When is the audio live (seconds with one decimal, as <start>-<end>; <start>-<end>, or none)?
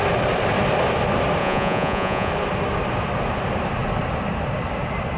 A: 0.0-1.4; 2.3-5.2